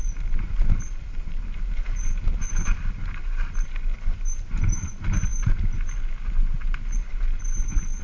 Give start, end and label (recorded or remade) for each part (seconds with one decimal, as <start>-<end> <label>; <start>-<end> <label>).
0.0-8.0 recorded